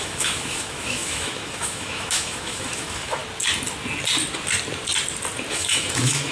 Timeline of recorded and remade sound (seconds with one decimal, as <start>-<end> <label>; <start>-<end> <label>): 0.0-3.2 remade; 3.2-5.5 recorded; 5.5-6.3 remade